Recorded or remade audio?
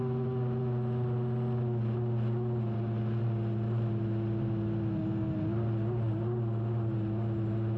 recorded